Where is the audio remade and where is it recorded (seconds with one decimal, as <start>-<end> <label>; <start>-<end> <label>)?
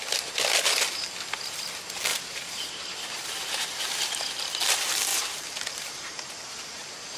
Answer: 0.0-2.1 recorded; 2.1-3.8 remade; 3.8-5.1 recorded; 5.1-7.2 remade